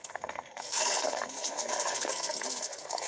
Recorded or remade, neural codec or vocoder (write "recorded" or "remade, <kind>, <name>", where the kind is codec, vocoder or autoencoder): remade, codec, SNAC